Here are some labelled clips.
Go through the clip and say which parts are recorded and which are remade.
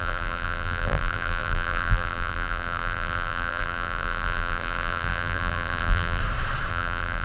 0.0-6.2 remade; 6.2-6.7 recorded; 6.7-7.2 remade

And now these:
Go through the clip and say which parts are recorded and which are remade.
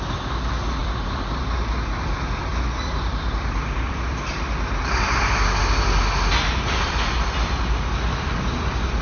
0.0-2.5 recorded; 2.5-5.6 remade; 5.6-9.0 recorded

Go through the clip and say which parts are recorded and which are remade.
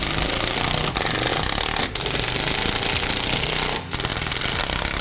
0.0-1.3 remade; 1.3-1.8 recorded; 1.8-4.1 remade; 4.1-4.6 recorded; 4.6-5.0 remade